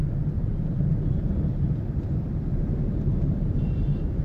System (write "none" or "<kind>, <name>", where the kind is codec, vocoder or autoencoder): vocoder, BigVGAN v2